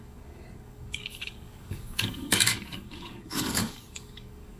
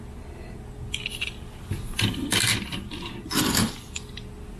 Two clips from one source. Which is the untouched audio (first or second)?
second